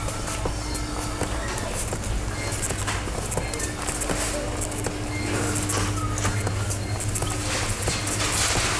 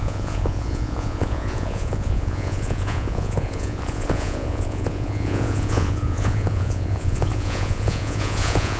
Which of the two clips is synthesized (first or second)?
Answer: second